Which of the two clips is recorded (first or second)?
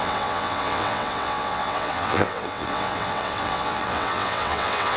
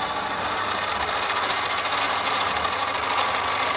second